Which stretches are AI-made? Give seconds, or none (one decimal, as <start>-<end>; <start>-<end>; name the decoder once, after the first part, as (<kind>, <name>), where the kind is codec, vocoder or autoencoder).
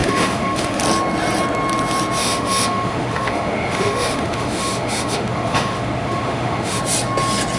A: 0.0-0.8 (autoencoder, DAC-VAE); 2.2-6.8